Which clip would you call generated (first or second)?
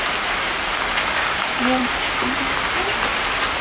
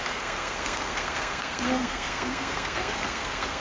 second